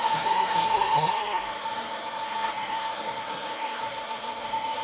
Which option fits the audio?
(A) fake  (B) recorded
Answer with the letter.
A